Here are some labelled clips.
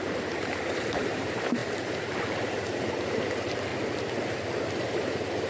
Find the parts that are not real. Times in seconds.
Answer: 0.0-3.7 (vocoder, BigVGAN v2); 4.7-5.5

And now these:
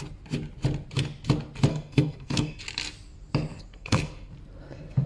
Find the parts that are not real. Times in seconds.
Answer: 1.7-2.6 (codec, SNAC); 3.7-4.3

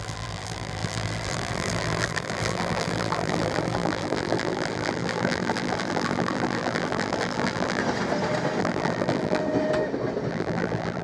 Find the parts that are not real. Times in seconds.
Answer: 0.0-7.8 (vocoder, BigVGAN v2); 8.6-9.4; 10.3-11.0

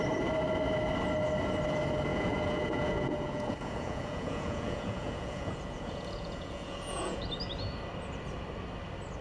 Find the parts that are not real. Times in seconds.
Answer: 2.1-7.2 (vocoder, Vocos)

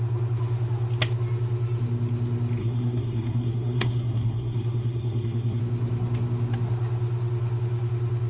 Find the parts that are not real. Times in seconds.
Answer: 2.6-5.6 (codec, SNAC)